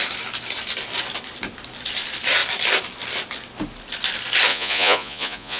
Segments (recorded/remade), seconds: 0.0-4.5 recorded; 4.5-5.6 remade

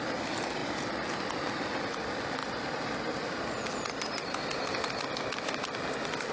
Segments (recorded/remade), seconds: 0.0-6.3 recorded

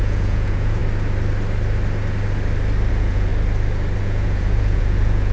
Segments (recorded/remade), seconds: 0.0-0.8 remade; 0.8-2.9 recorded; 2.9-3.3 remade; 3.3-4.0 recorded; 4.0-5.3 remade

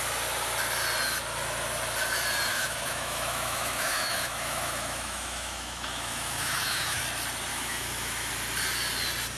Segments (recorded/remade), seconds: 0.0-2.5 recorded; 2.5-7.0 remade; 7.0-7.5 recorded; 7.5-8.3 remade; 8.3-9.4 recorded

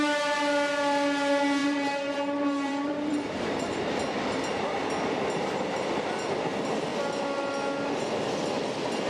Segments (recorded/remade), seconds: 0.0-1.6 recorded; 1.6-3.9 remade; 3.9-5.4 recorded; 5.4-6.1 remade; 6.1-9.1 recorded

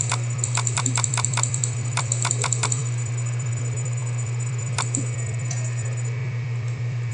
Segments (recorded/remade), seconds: 0.0-7.1 remade

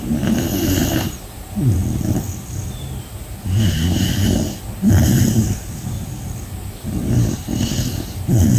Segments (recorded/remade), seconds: 0.0-8.6 recorded